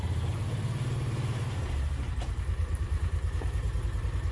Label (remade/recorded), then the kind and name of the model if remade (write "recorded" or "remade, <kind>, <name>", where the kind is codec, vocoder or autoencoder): remade, vocoder, BigVGAN v2